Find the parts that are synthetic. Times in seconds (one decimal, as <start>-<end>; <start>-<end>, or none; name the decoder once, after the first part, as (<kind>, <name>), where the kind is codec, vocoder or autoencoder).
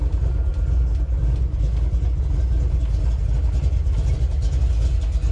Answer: none